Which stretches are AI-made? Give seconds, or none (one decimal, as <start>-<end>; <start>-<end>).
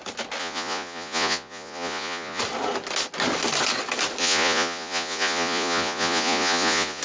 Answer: 0.4-2.4; 4.2-7.0